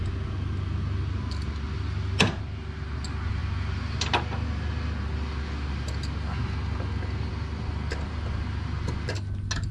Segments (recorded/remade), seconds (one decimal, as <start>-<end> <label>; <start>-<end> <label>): 0.0-9.7 recorded